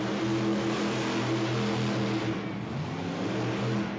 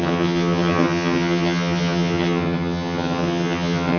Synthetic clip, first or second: second